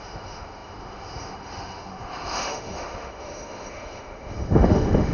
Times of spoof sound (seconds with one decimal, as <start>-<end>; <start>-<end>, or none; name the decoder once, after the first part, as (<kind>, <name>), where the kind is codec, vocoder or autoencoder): 0.0-5.1 (autoencoder, DAC-VAE)